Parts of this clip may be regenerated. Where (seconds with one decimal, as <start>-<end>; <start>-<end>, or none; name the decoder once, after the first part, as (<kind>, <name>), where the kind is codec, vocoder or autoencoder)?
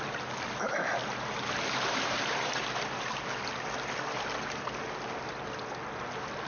1.0-2.5 (vocoder, BigVGAN v2)